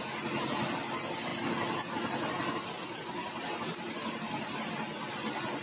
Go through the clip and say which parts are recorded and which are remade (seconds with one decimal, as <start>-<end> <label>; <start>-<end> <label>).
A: 0.0-5.6 recorded